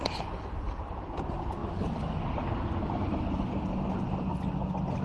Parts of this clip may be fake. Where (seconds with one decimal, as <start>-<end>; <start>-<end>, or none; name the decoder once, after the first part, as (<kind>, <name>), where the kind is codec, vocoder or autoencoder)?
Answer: none